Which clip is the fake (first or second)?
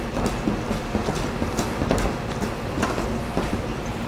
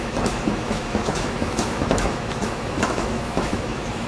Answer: second